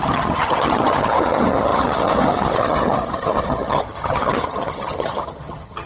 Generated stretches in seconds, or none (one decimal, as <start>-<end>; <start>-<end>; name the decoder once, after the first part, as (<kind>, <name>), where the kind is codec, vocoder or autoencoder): 0.0-5.9 (vocoder, HiFi-GAN)